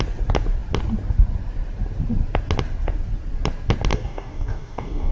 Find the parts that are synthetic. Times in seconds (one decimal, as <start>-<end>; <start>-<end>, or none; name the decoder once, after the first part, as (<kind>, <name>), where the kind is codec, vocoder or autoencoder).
3.9-5.1 (codec, DAC)